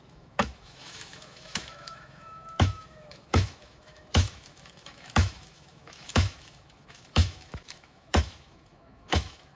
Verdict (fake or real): fake